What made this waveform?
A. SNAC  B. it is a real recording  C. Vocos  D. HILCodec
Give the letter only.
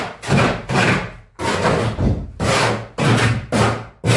B